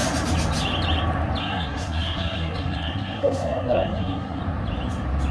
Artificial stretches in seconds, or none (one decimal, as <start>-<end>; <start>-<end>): 1.4-4.4